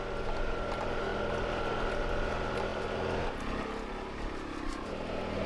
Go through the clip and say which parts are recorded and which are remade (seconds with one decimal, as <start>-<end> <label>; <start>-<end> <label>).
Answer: 0.0-5.5 recorded

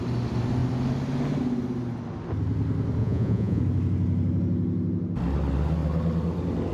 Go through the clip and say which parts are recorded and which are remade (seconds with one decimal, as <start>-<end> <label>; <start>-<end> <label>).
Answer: 0.0-3.0 recorded; 3.0-3.6 remade; 3.6-6.7 recorded

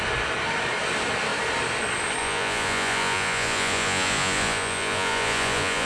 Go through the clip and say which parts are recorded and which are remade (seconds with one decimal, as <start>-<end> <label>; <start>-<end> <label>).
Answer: 0.0-2.2 recorded; 2.2-5.9 remade